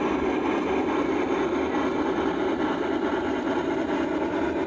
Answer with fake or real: real